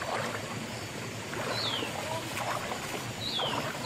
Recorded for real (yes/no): yes